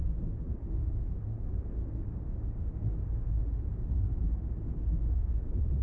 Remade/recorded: remade